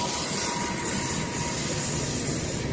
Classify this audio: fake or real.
real